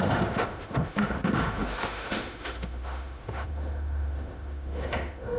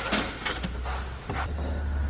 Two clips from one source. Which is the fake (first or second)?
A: first